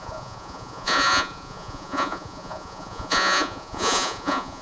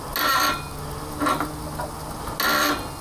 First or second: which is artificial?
first